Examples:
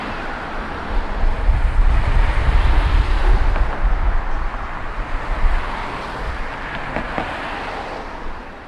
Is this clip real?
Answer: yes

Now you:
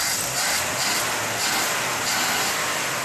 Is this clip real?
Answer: yes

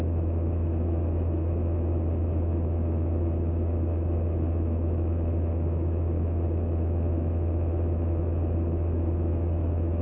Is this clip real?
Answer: no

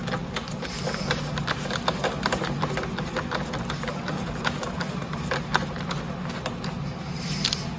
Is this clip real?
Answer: yes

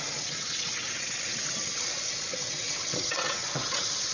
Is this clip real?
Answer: no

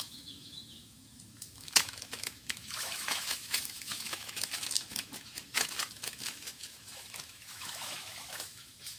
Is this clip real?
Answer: no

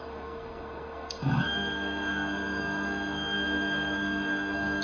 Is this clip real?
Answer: no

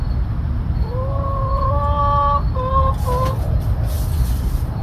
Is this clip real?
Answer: yes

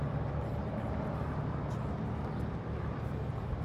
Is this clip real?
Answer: yes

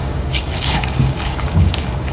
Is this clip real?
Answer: no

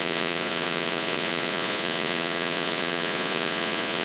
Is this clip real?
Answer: no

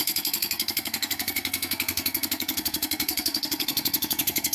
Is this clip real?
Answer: no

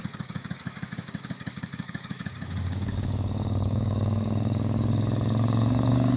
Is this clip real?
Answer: no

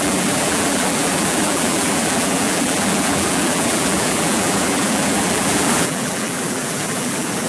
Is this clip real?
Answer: no